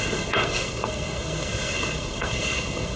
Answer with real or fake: fake